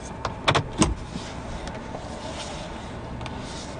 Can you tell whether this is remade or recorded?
recorded